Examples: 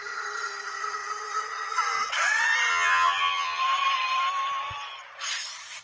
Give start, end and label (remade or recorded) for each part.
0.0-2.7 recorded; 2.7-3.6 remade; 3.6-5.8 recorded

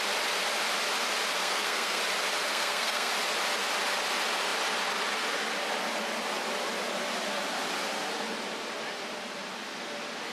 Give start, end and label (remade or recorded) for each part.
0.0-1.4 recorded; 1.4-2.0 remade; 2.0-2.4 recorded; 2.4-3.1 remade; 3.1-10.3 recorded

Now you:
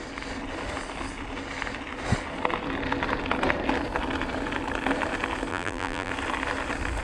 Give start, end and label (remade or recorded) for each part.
0.0-5.5 recorded; 5.5-6.1 remade; 6.1-7.0 recorded